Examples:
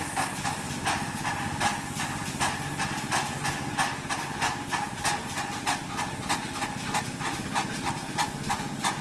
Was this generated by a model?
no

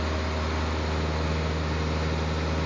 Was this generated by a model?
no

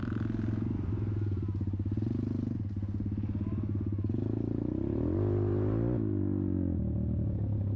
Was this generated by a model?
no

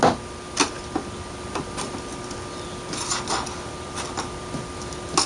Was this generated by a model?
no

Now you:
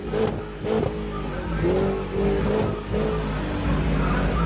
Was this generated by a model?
no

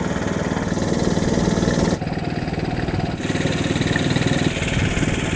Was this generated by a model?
no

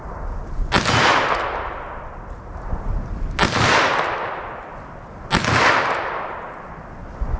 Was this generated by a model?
no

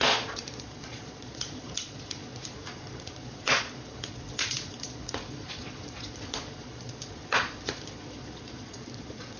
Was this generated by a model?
yes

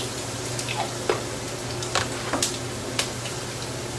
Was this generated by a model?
no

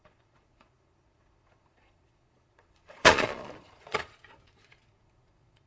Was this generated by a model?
yes